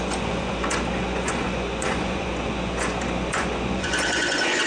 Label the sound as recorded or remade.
remade